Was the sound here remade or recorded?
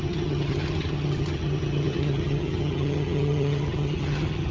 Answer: remade